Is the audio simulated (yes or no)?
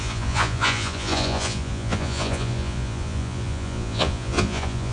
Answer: yes